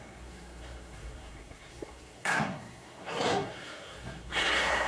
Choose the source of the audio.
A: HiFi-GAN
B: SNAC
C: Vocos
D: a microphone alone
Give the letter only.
B